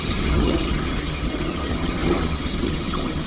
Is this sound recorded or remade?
remade